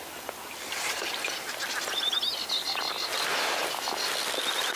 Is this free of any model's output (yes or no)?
yes